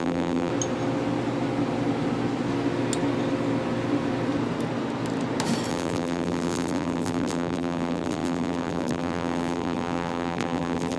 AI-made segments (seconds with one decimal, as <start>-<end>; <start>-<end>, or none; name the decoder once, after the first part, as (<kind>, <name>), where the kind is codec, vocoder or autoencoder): 0.0-0.5 (vocoder, BigVGAN v2); 5.7-11.0